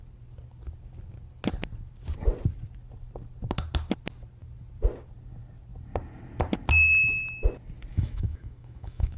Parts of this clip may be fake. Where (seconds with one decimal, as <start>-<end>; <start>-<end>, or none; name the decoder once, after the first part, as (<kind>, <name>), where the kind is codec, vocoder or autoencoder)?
7.9-9.2 (autoencoder, DAC-VAE)